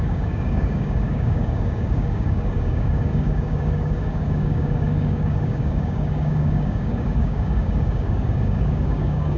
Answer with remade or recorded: remade